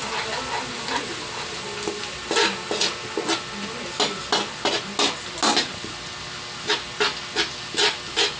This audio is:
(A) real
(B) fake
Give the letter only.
A